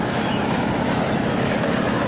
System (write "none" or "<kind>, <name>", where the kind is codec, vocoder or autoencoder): autoencoder, DAC-VAE